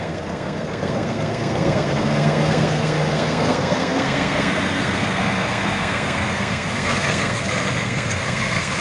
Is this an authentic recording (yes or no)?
no